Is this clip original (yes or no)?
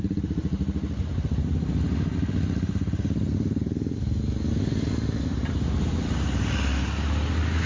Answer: yes